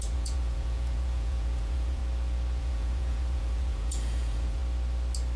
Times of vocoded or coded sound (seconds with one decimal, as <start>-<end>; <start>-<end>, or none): 0.0-2.0; 2.6-4.6